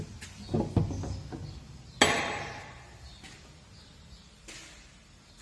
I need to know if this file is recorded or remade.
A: recorded